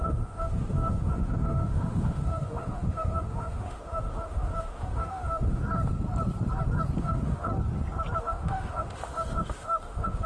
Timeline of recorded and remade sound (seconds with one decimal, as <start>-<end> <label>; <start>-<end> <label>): 0.0-5.6 remade; 5.6-7.0 recorded; 7.0-7.5 remade; 7.5-8.2 recorded; 8.2-10.3 remade